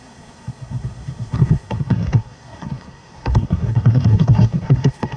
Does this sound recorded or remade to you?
remade